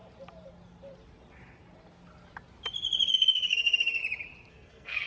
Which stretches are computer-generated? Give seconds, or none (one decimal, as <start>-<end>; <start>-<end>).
3.1-4.0; 4.5-5.1